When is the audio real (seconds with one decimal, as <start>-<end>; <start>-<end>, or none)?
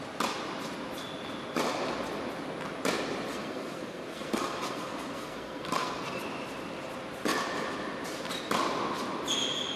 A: 0.0-3.3; 6.2-9.8